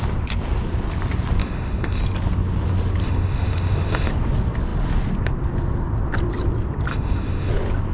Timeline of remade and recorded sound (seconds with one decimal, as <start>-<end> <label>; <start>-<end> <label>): 0.0-1.4 recorded; 1.4-2.0 remade; 2.0-3.0 recorded; 3.0-4.1 remade; 4.1-6.9 recorded; 6.9-7.5 remade; 7.5-7.9 recorded